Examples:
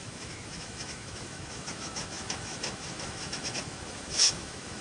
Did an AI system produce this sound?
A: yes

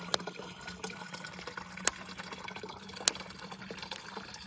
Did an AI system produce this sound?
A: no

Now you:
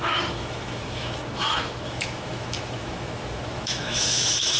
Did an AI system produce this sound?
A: yes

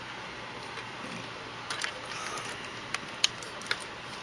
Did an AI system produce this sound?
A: no